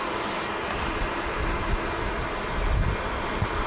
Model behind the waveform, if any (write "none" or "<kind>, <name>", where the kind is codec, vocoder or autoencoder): none